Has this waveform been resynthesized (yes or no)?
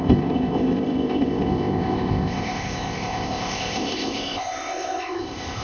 yes